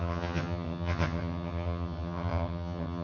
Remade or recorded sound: remade